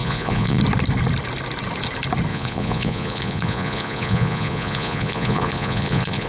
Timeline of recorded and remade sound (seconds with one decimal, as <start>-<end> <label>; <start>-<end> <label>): 0.0-0.6 remade; 0.6-2.3 recorded; 2.3-6.3 remade

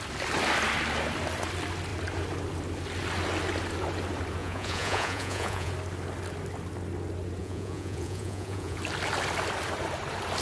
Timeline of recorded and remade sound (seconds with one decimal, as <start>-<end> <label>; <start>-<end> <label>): 0.0-4.4 recorded; 4.4-5.7 remade; 5.7-7.4 recorded; 7.4-8.8 remade; 8.8-10.4 recorded